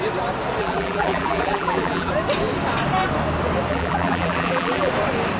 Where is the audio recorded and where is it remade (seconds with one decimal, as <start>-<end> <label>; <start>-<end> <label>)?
0.0-0.6 recorded; 0.6-2.1 remade; 2.1-3.7 recorded; 3.7-4.9 remade; 4.9-5.4 recorded